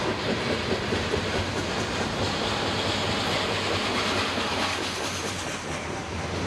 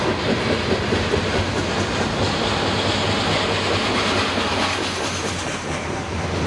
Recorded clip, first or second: second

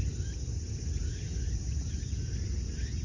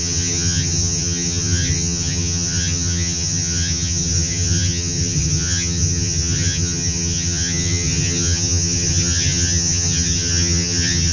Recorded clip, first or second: first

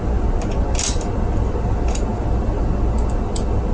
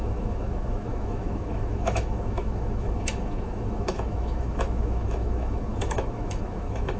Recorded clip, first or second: first